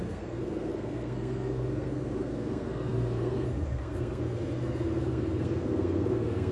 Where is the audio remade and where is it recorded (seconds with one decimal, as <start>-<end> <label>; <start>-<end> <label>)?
0.0-6.5 remade